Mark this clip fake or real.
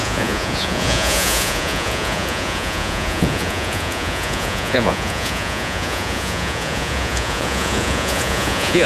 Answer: fake